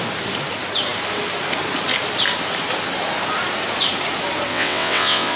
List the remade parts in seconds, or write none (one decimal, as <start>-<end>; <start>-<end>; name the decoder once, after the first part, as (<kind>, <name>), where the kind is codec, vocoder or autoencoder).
4.5-5.4 (vocoder, WaveNeXt)

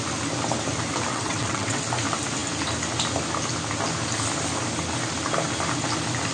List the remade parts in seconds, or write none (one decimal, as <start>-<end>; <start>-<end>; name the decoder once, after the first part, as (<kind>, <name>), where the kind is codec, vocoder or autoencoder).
1.1-1.8 (vocoder, WaveNeXt)

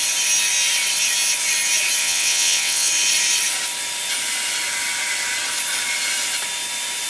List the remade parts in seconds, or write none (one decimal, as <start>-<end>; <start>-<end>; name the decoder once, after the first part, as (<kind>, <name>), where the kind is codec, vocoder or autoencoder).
2.0-2.9 (vocoder, WaveNeXt)